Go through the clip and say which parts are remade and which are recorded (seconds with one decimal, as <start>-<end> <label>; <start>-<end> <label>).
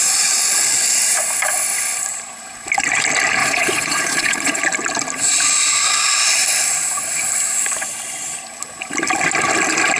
0.0-3.4 recorded; 3.4-4.6 remade; 4.6-10.0 recorded